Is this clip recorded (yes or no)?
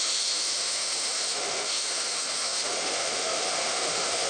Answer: no